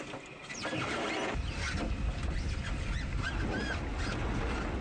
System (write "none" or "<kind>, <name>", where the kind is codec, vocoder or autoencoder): none